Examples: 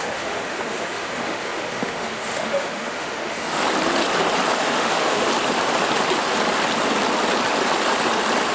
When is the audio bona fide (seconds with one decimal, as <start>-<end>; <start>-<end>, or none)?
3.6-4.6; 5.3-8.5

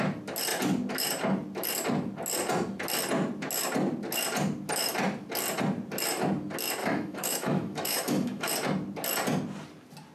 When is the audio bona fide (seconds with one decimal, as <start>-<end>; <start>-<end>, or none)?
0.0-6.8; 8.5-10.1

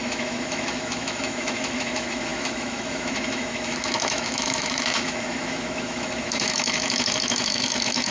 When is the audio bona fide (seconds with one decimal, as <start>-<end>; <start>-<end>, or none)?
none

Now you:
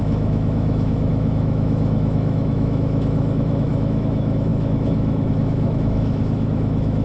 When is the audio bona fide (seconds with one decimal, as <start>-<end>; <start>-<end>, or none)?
none

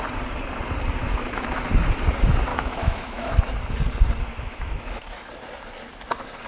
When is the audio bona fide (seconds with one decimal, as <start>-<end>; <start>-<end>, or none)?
0.0-1.0; 1.6-2.5; 3.3-4.3; 5.3-6.5